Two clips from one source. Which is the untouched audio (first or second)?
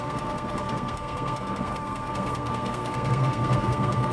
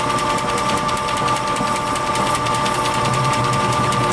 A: second